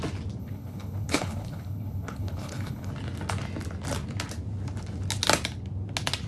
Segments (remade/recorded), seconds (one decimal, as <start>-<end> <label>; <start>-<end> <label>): 0.0-0.4 recorded; 0.4-2.9 remade; 2.9-6.3 recorded